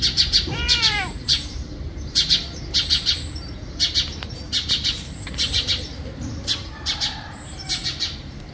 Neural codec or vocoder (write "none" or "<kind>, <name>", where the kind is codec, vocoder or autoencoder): vocoder, BigVGAN v2